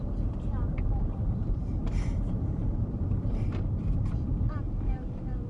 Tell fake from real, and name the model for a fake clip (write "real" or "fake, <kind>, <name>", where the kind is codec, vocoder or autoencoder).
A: fake, vocoder, BigVGAN v2